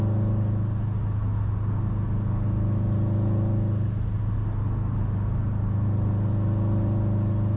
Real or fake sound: real